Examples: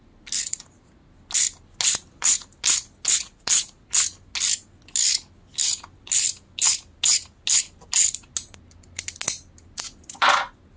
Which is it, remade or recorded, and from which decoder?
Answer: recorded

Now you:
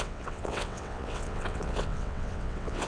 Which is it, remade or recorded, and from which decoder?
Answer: remade, vocoder, WaveNeXt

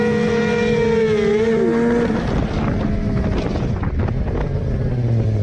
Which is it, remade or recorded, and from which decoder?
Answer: recorded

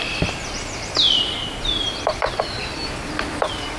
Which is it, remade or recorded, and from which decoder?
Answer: recorded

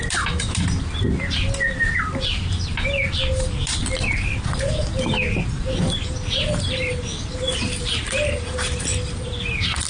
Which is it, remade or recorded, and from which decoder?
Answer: remade, vocoder, BigVGAN v2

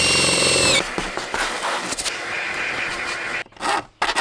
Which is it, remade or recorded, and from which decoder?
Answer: recorded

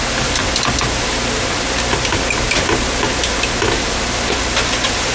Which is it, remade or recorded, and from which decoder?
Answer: recorded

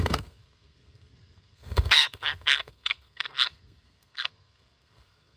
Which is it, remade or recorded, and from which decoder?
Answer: remade, codec, SNAC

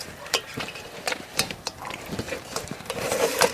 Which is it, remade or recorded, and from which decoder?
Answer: remade, vocoder, BigVGAN v2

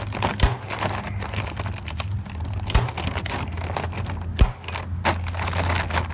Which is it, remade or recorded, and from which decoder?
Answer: recorded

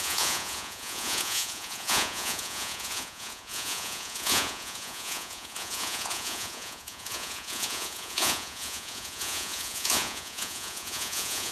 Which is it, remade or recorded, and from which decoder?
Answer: remade, vocoder, Vocos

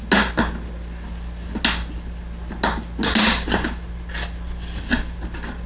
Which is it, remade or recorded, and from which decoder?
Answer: recorded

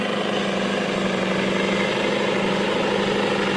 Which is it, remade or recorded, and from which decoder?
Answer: recorded